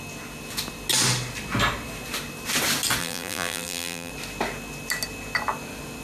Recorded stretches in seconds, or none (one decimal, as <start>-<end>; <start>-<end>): 0.0-3.0; 4.1-6.0